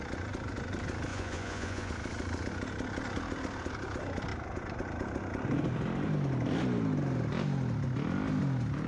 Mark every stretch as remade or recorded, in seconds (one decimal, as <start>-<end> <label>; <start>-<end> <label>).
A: 0.0-1.1 recorded; 1.1-1.9 remade; 1.9-8.9 recorded